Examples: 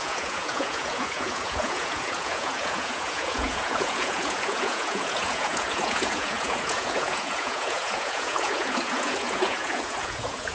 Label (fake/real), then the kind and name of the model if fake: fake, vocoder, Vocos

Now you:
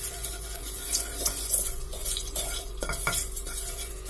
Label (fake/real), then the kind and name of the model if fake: fake, vocoder, Vocos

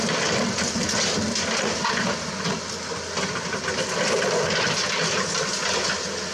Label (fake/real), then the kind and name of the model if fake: real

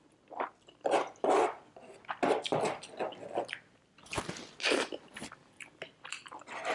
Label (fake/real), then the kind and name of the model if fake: real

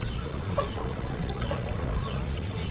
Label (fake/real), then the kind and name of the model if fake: fake, vocoder, Vocos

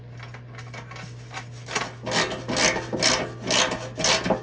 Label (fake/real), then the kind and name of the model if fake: real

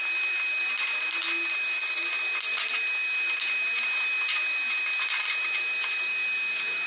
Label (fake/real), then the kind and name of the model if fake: real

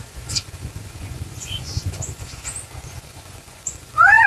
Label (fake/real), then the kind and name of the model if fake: fake, vocoder, Vocos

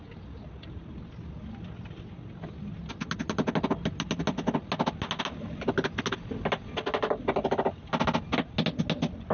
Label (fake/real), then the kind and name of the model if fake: real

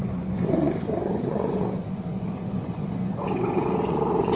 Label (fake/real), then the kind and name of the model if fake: fake, vocoder, Vocos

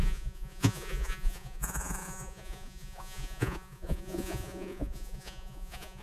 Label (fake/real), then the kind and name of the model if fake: fake, vocoder, Vocos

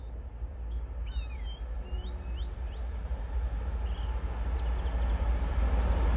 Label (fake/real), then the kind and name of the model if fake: real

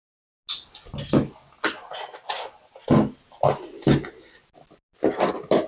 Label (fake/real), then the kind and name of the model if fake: real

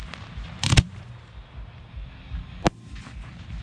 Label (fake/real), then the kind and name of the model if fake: real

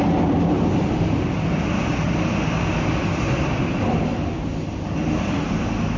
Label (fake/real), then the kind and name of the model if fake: real